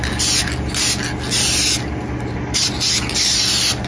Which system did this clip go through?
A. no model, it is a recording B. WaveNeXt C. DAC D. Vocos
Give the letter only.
A